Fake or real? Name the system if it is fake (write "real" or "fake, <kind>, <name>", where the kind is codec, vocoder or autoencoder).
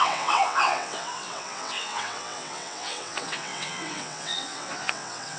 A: fake, vocoder, WaveNeXt